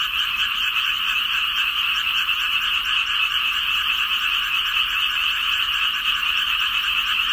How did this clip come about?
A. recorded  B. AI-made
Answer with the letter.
B